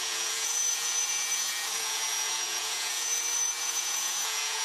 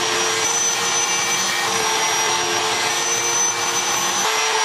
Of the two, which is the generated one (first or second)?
first